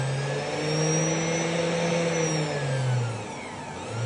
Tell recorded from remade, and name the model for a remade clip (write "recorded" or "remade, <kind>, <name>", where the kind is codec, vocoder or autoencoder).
recorded